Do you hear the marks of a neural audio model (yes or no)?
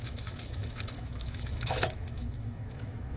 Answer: yes